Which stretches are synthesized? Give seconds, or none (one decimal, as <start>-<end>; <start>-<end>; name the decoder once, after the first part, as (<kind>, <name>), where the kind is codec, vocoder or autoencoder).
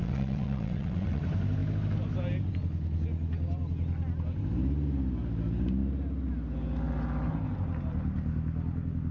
0.0-1.2 (vocoder, WaveNeXt)